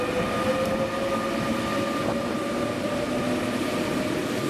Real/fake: real